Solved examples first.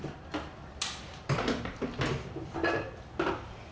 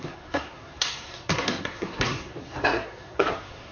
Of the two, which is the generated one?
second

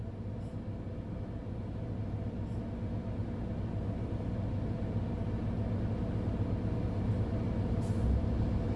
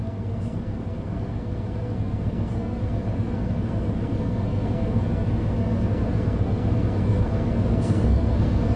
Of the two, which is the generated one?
second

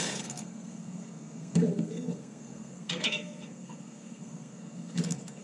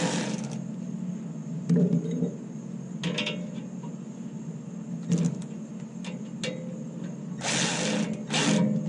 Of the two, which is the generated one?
first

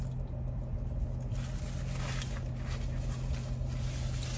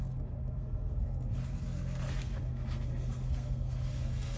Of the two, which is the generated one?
second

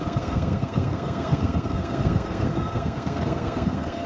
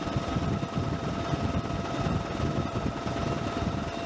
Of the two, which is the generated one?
first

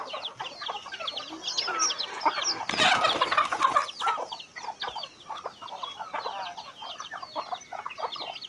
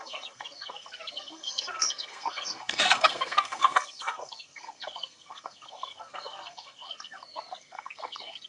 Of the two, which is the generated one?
second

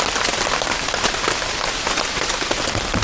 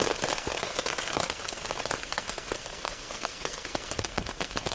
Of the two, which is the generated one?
second